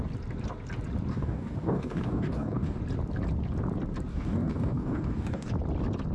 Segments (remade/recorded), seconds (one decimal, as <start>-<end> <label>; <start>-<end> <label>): 0.0-1.1 recorded; 1.1-2.8 remade; 2.8-4.1 recorded; 4.1-5.5 remade; 5.5-6.1 recorded